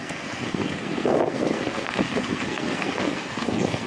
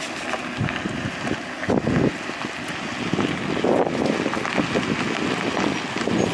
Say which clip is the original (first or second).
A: second